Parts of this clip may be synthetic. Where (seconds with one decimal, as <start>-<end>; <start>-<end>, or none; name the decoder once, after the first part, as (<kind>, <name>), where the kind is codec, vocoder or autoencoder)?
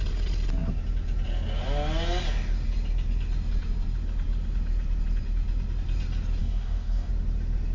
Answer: 6.4-7.1 (codec, DAC)